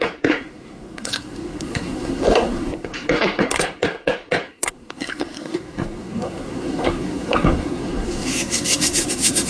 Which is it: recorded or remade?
remade